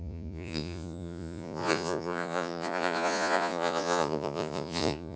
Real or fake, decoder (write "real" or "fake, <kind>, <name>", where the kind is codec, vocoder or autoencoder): fake, vocoder, Vocos